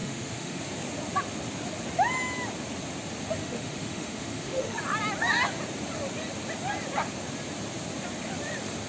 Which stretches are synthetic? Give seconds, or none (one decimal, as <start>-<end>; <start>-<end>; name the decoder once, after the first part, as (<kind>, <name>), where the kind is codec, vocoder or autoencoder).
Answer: 0.0-0.6 (autoencoder, DAC-VAE); 3.4-4.8